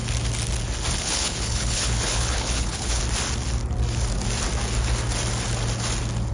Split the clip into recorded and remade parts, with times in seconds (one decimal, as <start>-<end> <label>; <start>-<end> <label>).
0.0-1.0 recorded; 1.0-3.0 remade; 3.0-6.3 recorded